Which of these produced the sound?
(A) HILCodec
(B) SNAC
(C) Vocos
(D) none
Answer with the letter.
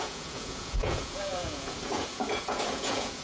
C